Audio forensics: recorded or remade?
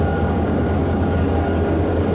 remade